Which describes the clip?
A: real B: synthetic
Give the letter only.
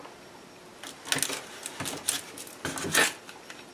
A